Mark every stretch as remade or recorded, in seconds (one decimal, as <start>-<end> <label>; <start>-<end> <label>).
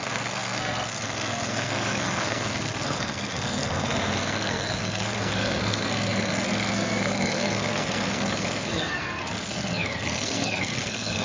0.0-11.2 remade